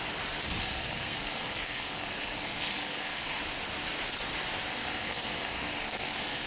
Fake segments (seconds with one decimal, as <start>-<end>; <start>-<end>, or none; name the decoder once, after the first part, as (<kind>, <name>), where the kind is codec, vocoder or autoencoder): 0.6-3.4 (codec, SNAC); 4.7-6.5